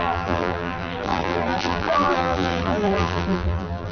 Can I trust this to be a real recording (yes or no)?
no